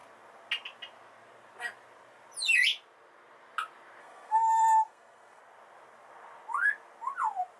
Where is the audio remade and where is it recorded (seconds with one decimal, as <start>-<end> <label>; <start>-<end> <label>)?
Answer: 0.0-4.0 recorded; 4.0-5.4 remade; 5.4-7.6 recorded